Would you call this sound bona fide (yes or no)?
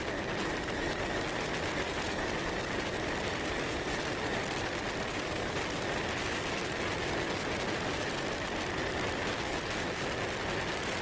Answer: yes